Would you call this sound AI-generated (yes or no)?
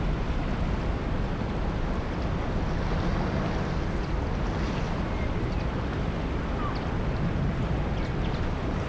no